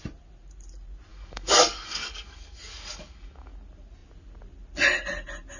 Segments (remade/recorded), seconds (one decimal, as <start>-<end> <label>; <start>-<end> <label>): 0.0-1.1 recorded; 1.1-3.5 remade; 3.5-5.6 recorded